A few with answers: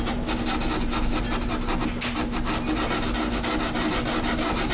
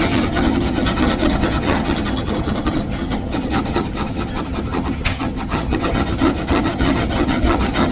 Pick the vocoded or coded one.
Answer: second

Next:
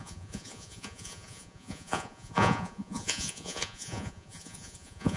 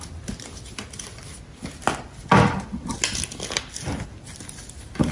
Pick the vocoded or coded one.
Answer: first